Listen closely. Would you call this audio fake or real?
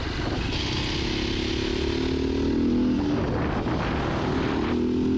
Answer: real